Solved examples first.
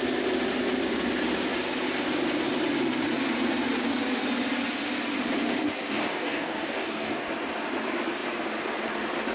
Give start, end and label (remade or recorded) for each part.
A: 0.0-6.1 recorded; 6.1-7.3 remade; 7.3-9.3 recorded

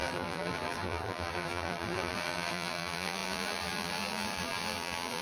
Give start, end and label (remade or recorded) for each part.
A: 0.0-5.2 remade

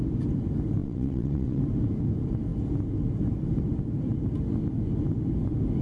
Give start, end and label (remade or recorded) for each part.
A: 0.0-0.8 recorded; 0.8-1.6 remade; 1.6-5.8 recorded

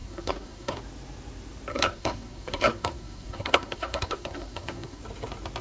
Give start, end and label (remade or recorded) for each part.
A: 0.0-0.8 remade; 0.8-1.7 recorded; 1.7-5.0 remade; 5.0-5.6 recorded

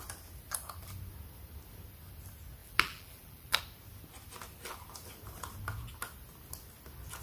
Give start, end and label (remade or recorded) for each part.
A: 0.0-2.6 recorded; 2.6-3.6 remade; 3.6-7.2 recorded